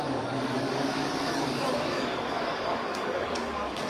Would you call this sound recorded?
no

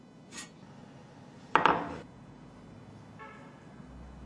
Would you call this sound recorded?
yes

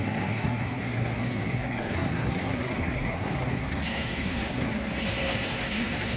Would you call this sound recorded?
no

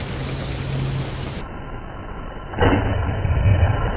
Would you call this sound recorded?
yes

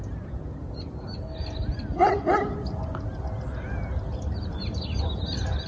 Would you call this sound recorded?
yes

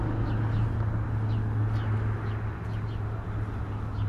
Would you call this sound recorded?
yes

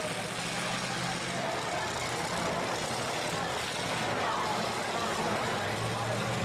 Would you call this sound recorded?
yes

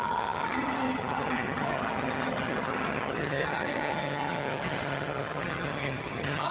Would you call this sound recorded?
no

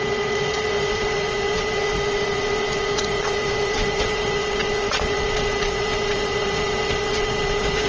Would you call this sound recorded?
no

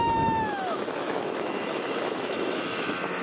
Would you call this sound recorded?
no